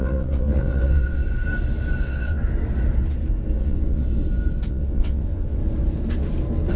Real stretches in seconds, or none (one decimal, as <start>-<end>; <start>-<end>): 1.2-2.0; 2.4-3.6; 4.0-4.7; 5.6-6.8